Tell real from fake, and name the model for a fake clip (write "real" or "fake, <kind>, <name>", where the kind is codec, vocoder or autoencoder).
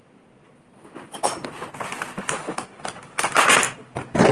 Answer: real